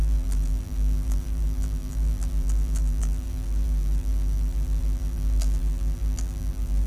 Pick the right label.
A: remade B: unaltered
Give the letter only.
A